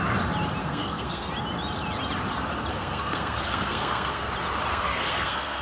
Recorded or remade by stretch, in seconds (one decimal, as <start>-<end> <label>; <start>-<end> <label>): 0.0-0.6 recorded; 0.6-1.3 remade; 1.3-2.7 recorded; 2.7-4.3 remade; 4.3-4.7 recorded; 4.7-5.6 remade